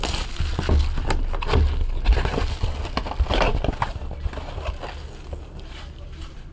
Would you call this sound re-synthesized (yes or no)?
no